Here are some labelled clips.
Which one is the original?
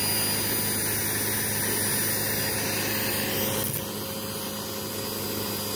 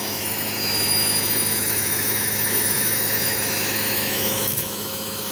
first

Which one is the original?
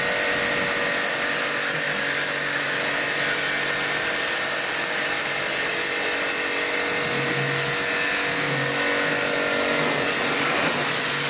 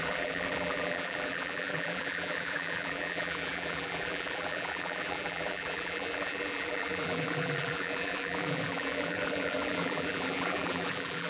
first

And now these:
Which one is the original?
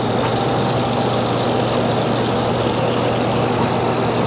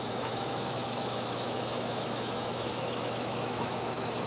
first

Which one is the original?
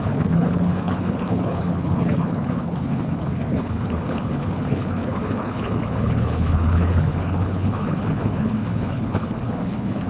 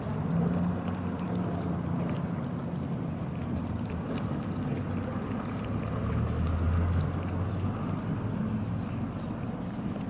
second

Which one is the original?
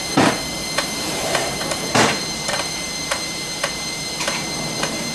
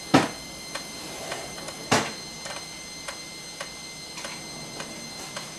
second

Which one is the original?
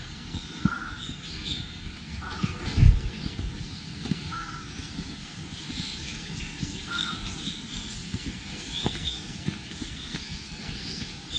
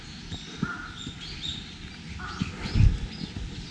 second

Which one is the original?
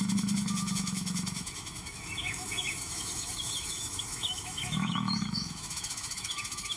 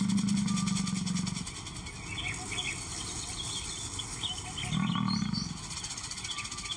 second